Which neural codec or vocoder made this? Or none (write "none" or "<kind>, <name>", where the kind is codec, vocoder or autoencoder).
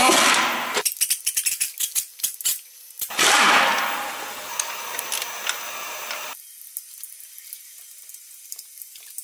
none